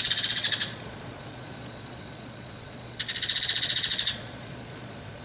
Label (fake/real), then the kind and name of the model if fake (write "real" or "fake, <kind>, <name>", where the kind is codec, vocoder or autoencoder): fake, vocoder, Vocos